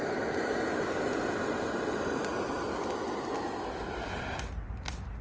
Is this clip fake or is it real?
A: real